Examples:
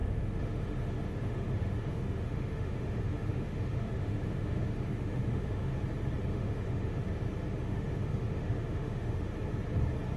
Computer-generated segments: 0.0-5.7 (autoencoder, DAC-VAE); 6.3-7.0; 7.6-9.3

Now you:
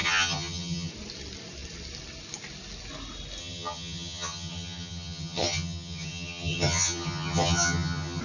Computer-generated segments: 0.0-0.9 (vocoder, HiFi-GAN); 3.4-8.2